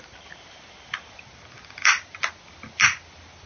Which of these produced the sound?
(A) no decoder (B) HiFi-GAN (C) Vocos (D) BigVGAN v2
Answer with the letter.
A